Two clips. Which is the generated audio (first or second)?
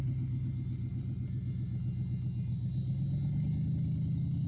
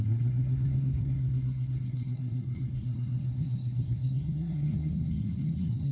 second